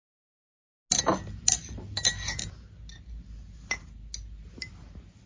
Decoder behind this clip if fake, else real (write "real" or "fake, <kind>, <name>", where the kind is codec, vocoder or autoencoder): real